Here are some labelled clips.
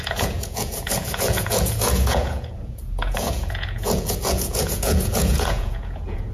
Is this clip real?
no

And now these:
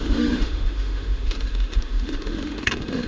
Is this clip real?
no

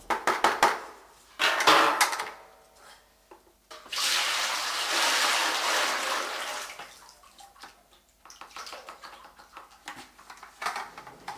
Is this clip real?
yes